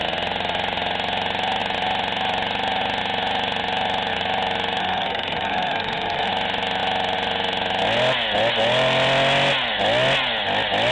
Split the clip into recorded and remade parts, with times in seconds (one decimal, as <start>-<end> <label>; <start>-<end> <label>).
0.0-4.8 recorded; 4.8-6.3 remade; 6.3-10.9 recorded